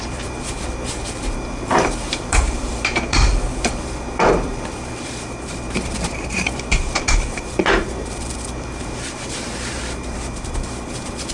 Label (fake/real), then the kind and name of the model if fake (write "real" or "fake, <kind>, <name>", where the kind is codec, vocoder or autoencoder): fake, vocoder, BigVGAN v2